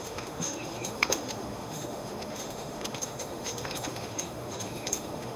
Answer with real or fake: fake